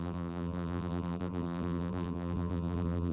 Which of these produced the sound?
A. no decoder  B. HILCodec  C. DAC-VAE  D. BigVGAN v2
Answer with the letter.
D